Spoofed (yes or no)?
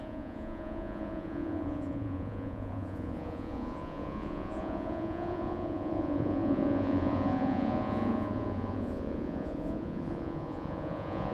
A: yes